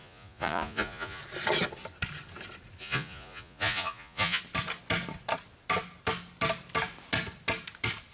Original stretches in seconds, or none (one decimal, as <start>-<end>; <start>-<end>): 1.2-2.8; 4.4-8.1